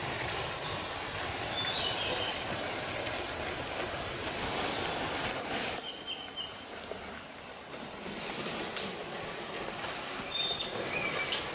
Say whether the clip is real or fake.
real